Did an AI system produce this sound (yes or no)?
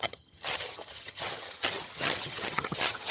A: yes